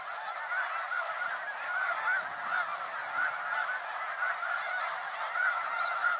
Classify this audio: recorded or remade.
recorded